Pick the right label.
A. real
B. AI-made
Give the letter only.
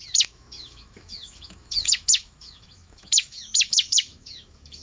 B